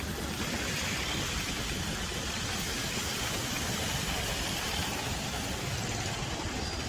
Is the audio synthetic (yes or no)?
yes